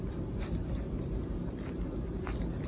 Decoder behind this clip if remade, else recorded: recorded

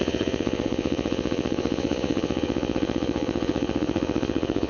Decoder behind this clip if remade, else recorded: remade, vocoder, Vocos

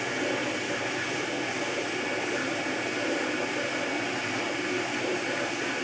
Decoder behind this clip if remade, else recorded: recorded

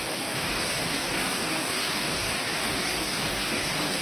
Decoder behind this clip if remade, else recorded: remade, codec, DAC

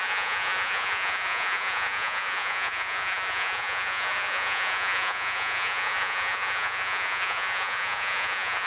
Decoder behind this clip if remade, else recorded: remade, vocoder, Vocos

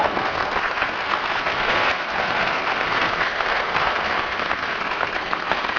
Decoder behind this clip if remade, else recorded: remade, codec, SNAC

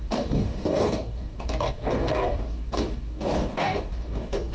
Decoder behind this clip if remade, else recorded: remade, codec, DAC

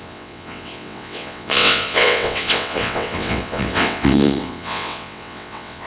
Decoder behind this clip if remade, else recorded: remade, vocoder, WaveNeXt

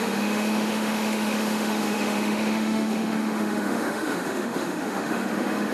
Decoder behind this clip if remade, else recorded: remade, autoencoder, DAC-VAE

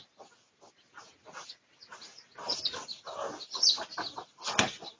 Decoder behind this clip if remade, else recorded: recorded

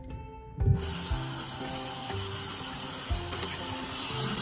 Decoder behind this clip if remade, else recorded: recorded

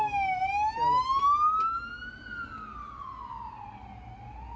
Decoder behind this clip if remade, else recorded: recorded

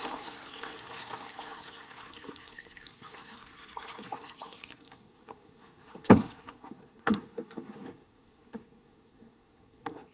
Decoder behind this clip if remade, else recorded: remade, codec, SNAC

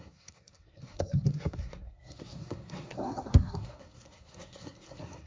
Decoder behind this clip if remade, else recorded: remade, codec, SNAC